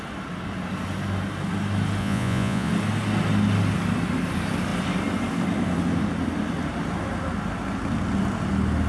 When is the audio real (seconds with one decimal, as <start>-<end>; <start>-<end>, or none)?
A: 0.0-2.0; 2.7-8.9